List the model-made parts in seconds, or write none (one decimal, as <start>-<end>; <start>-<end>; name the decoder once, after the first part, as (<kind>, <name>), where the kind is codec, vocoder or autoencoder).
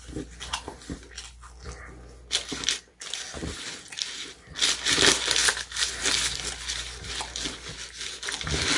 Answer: none